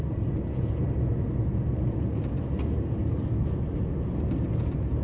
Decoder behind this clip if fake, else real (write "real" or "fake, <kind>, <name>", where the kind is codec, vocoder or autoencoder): real